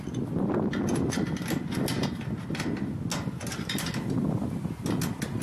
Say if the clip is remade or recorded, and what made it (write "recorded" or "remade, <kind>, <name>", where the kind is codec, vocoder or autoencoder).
recorded